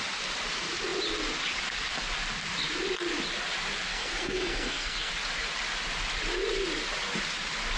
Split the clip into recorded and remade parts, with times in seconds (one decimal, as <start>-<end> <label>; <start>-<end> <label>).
0.0-3.9 recorded; 3.9-5.1 remade; 5.1-7.8 recorded